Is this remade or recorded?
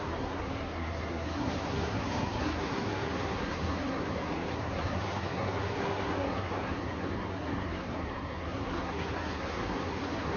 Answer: remade